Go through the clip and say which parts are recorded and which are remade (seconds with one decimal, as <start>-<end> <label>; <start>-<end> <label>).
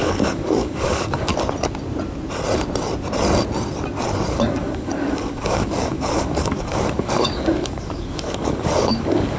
0.0-1.3 remade; 1.3-4.3 recorded; 4.3-9.4 remade